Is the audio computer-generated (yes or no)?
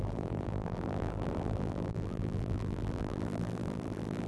yes